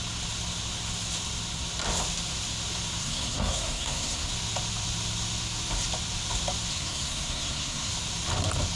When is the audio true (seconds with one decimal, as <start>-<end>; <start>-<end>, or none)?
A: 0.0-3.0; 4.3-6.7; 7.9-8.8

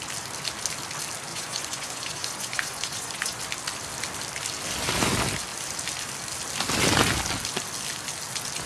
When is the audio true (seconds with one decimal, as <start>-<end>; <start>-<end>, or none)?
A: 0.0-1.3; 3.4-8.7

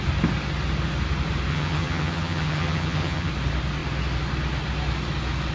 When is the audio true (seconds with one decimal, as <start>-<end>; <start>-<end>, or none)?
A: 0.0-1.5; 3.3-5.5